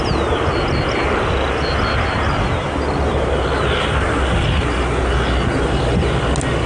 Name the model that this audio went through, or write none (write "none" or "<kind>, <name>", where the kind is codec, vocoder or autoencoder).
none